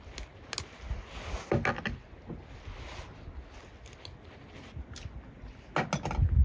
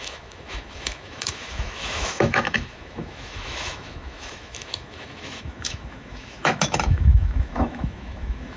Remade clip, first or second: second